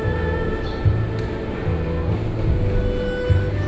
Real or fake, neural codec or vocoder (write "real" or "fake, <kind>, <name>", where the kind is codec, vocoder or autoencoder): real